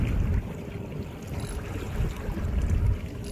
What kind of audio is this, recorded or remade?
recorded